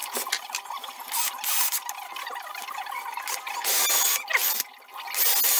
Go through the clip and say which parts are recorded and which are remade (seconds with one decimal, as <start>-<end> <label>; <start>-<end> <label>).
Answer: 0.0-5.6 recorded